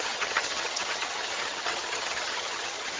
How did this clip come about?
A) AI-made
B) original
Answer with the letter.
A